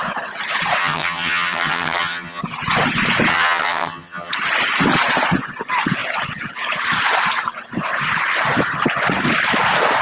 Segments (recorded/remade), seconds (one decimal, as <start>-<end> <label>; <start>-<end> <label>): 0.0-0.8 recorded; 0.8-2.4 remade; 2.4-3.3 recorded; 3.3-4.3 remade; 4.3-10.0 recorded